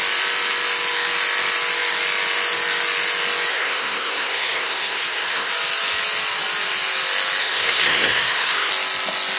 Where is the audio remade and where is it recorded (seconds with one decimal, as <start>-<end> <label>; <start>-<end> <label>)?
0.0-3.5 recorded; 3.5-5.5 remade; 5.5-7.4 recorded; 7.4-8.7 remade; 8.7-9.4 recorded